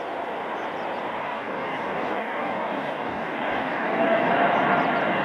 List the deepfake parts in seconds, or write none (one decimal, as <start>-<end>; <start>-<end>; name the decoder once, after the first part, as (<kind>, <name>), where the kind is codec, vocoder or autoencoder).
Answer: 1.2-4.3 (codec, DAC)